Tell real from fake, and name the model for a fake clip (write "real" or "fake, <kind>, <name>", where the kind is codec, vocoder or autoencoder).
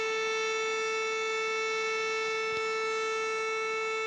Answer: real